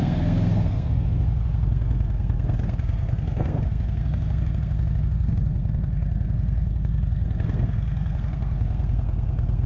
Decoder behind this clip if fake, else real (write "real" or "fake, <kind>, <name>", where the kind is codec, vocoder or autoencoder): fake, codec, SNAC